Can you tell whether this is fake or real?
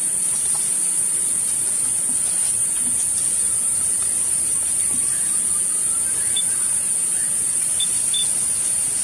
fake